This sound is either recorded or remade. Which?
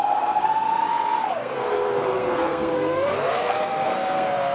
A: remade